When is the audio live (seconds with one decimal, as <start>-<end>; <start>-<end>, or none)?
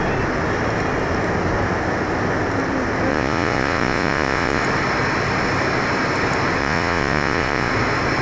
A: 0.0-3.1; 4.6-6.6; 7.7-8.2